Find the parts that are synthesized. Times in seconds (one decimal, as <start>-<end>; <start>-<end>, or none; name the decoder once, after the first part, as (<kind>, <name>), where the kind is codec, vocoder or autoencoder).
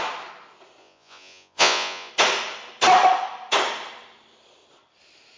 0.8-2.1 (vocoder, Vocos)